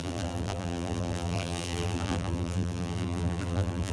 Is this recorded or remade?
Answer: remade